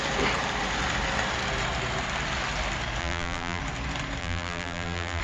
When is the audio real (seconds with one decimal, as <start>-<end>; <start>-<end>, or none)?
0.0-3.0; 3.6-4.2